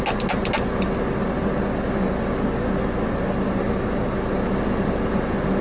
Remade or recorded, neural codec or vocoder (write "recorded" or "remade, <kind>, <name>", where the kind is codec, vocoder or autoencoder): recorded